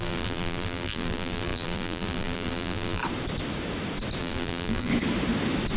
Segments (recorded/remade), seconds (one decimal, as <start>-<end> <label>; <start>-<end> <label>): 0.0-3.0 remade; 3.0-4.2 recorded; 4.2-4.9 remade; 4.9-5.8 recorded